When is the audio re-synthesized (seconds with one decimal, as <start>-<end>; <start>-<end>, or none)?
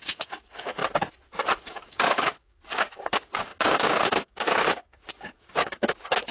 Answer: 0.0-0.8; 1.7-6.3